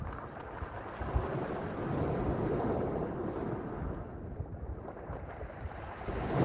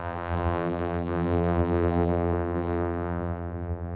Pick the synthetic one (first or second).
second